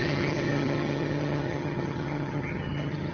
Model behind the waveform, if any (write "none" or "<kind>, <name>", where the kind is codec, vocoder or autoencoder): vocoder, HiFi-GAN